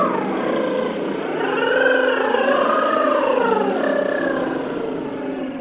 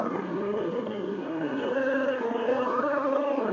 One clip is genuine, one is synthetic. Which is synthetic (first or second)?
second